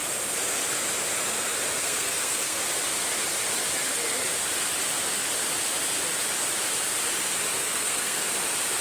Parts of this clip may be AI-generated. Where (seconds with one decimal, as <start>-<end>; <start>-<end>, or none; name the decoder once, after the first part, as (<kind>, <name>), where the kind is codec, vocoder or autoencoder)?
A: 1.8-2.6 (codec, SNAC); 7.6-8.3